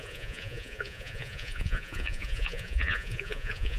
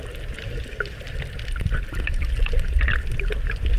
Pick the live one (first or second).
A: second